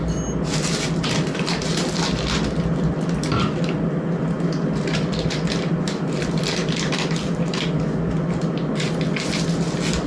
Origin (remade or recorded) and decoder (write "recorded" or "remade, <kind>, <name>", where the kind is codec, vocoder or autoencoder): recorded